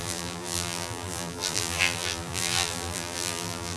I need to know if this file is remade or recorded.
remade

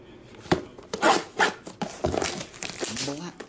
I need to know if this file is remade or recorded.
recorded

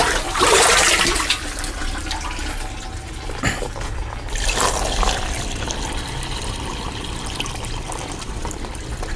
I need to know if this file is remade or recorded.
recorded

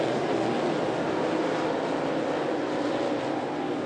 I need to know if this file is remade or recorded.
recorded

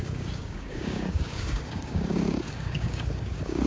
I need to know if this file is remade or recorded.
remade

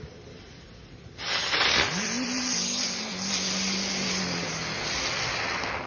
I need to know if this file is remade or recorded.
recorded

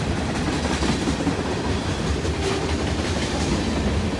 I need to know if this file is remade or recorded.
recorded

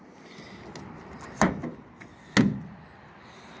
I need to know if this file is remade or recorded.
recorded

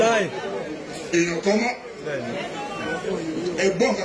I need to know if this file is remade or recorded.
recorded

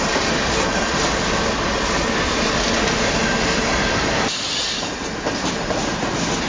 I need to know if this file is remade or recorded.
recorded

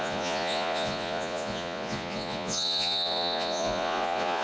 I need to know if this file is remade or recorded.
remade